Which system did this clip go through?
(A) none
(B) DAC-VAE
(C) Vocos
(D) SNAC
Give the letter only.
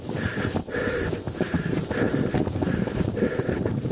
A